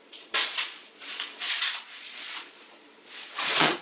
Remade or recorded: remade